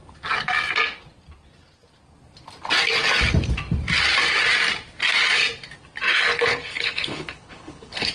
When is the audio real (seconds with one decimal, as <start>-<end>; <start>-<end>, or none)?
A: 0.0-6.1